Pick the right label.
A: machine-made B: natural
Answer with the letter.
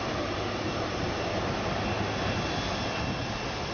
B